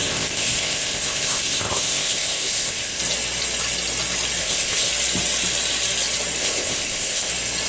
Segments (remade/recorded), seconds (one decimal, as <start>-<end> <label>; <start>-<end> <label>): 0.0-3.0 remade; 3.0-4.4 recorded; 4.4-4.9 remade; 4.9-6.4 recorded; 6.4-7.3 remade; 7.3-7.7 recorded